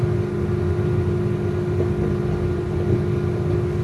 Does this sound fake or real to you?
real